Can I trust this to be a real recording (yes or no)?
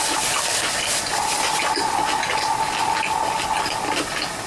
yes